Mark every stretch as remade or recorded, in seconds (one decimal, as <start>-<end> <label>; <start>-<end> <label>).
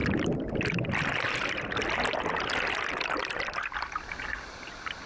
0.0-5.1 recorded